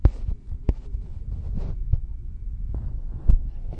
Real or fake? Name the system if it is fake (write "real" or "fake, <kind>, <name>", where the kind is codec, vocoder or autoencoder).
real